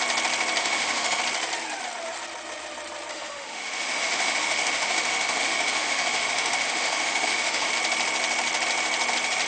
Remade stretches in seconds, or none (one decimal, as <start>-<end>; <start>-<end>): 0.6-1.2; 3.1-7.7